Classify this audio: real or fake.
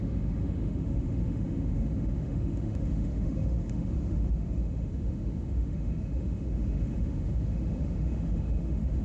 fake